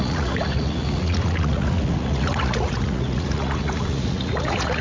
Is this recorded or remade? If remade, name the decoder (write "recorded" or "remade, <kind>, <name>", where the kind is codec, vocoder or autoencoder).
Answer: remade, vocoder, Vocos